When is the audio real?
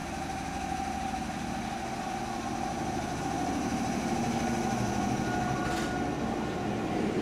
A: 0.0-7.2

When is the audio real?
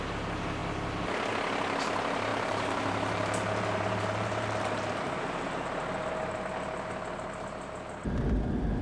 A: 0.0-2.3; 5.5-8.8